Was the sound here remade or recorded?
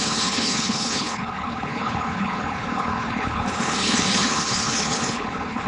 remade